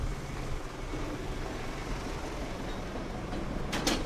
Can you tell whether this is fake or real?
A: real